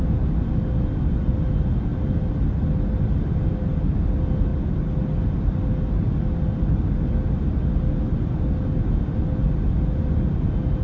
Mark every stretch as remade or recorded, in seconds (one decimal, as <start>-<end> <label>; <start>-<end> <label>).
0.0-10.8 recorded